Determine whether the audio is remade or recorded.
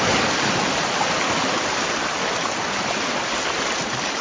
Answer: recorded